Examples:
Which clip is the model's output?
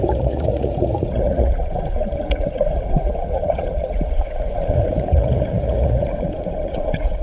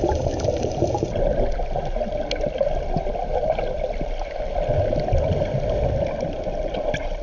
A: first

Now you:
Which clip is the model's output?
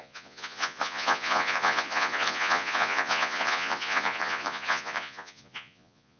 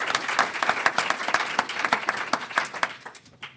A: first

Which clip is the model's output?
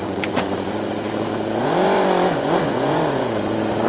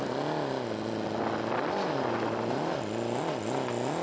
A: first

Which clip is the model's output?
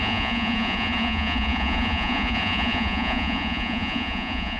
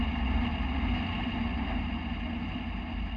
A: first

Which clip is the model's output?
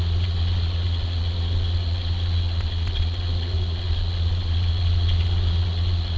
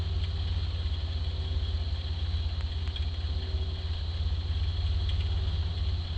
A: first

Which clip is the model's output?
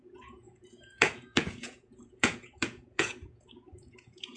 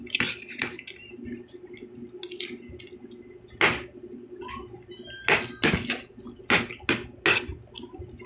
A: first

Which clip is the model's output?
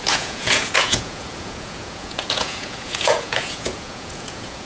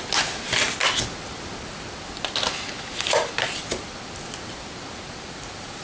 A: first